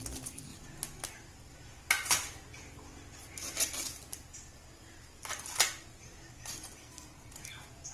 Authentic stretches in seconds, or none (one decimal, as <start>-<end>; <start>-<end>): 0.0-6.8; 7.3-7.9